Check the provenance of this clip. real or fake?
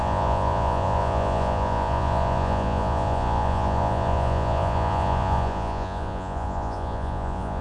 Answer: fake